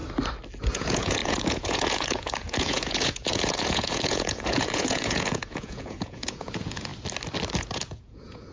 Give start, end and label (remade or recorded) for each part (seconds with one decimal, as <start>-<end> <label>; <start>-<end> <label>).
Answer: 0.0-0.6 recorded; 0.6-6.9 remade; 6.9-7.6 recorded; 7.6-8.5 remade